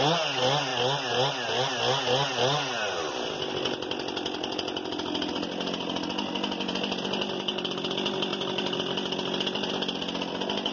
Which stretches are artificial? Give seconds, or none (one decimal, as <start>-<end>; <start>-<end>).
none